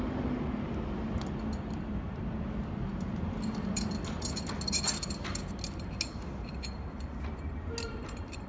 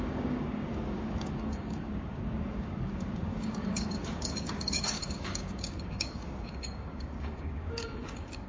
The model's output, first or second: second